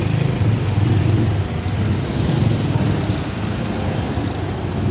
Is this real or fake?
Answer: real